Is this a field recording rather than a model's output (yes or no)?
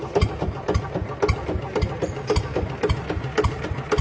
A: yes